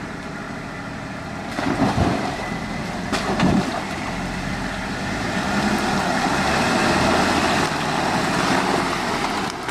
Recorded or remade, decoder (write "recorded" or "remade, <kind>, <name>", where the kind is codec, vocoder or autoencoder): recorded